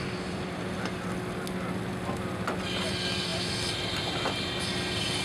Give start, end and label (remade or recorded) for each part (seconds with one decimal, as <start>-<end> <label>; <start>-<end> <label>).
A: 0.0-5.2 recorded